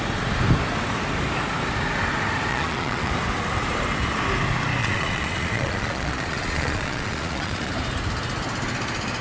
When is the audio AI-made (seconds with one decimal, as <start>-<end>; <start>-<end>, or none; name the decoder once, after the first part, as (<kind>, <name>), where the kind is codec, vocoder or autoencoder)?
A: 2.5-3.1 (vocoder, Vocos); 4.8-7.7